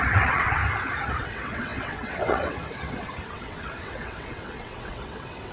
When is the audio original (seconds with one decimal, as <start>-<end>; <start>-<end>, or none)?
0.6-1.1